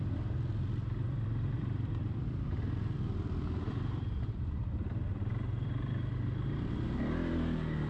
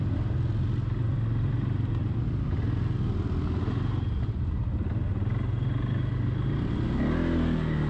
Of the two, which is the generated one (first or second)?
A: first